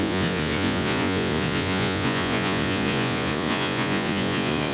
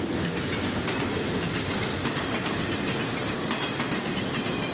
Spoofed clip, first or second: first